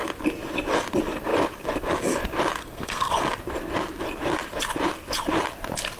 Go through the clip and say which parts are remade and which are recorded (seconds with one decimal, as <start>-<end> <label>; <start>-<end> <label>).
0.0-2.6 recorded; 2.6-3.1 remade; 3.1-6.0 recorded